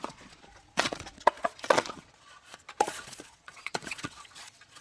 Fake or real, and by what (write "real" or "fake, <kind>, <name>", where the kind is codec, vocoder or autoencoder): fake, vocoder, Vocos